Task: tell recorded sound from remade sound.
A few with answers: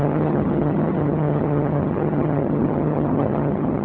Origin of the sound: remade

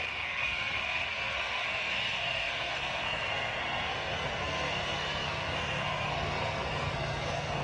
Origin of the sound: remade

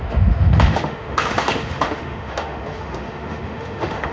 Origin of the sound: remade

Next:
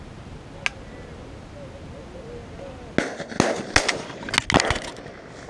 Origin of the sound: recorded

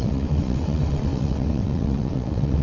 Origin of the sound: remade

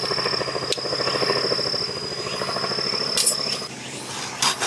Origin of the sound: recorded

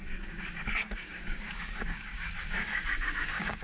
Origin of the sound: remade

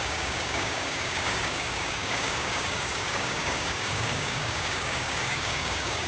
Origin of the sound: remade